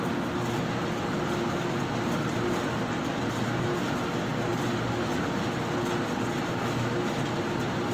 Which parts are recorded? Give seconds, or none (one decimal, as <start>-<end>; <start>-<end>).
0.0-7.9